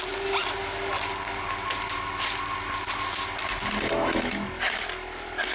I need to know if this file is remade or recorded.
recorded